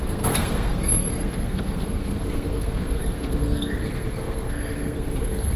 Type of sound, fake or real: fake